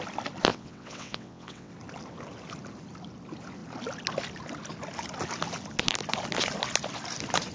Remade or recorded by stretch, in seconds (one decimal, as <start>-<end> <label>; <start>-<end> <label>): 0.0-0.5 recorded; 0.5-1.7 remade; 1.7-7.5 recorded